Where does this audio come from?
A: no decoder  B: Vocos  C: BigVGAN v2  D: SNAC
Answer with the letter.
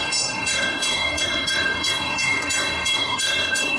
D